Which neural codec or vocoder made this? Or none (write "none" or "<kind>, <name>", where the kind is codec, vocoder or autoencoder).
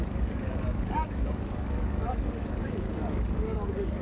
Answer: codec, DAC